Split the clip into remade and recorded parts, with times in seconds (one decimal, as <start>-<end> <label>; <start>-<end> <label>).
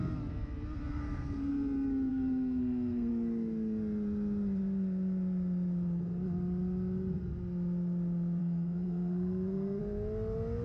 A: 0.0-0.9 recorded; 0.9-1.5 remade; 1.5-2.1 recorded; 2.1-3.1 remade; 3.1-8.4 recorded; 8.4-9.8 remade; 9.8-10.6 recorded